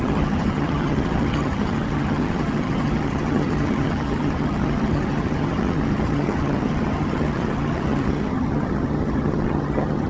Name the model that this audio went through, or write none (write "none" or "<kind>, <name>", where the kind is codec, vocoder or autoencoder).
vocoder, HiFi-GAN